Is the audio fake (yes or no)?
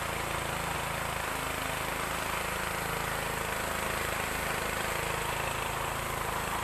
no